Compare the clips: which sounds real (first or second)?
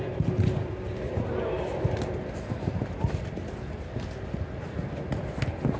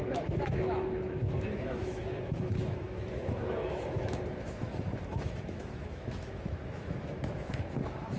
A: first